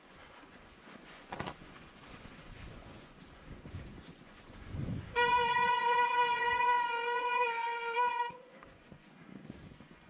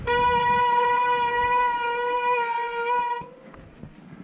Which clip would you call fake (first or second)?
first